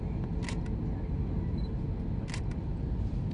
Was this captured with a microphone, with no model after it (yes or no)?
yes